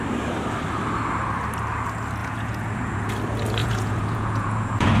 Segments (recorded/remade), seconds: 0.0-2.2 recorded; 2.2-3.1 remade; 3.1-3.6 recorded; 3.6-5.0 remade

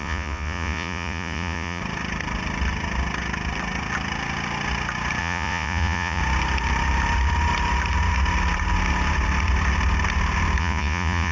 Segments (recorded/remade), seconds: 0.0-1.8 remade; 1.8-5.2 recorded; 5.2-6.2 remade; 6.2-10.6 recorded; 10.6-11.3 remade